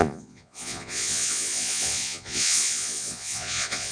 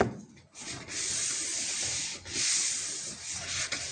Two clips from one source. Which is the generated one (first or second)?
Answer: first